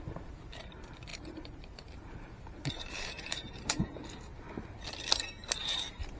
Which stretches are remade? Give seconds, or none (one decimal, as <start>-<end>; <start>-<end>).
0.0-4.0; 5.6-6.2